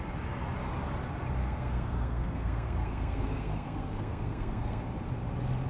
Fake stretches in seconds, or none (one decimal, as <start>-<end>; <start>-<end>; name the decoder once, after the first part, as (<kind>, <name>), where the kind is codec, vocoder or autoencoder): 1.4-4.8 (codec, SNAC)